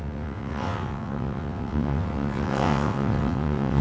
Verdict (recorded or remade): remade